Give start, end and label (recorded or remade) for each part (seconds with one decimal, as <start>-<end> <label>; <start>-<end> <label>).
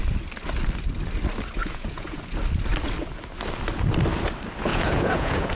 0.0-1.6 recorded; 1.6-2.2 remade; 2.2-4.7 recorded; 4.7-5.5 remade